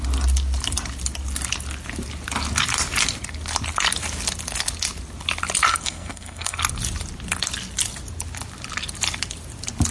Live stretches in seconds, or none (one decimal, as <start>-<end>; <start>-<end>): 0.0-5.7; 6.6-9.9